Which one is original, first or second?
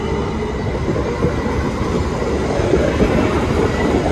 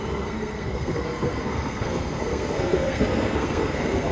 first